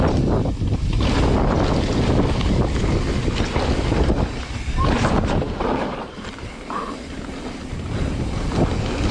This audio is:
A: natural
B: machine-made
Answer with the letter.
A